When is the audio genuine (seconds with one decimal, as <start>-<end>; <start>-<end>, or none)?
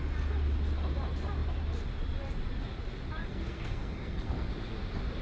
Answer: 0.0-3.2; 4.5-5.2